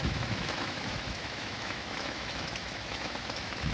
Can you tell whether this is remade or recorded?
remade